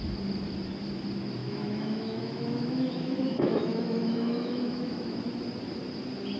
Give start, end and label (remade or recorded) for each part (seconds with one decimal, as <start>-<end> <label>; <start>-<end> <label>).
0.0-1.4 recorded; 1.4-5.2 remade; 5.2-6.4 recorded